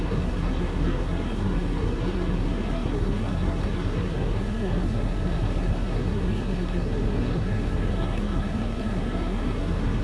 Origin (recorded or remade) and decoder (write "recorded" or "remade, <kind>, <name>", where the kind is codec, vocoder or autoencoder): remade, codec, SNAC